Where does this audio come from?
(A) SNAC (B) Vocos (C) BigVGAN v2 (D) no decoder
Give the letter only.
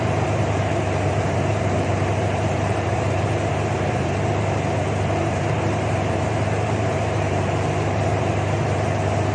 C